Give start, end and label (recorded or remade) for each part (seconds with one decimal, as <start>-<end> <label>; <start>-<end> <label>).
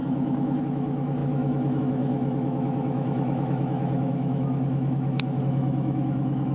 0.0-6.5 remade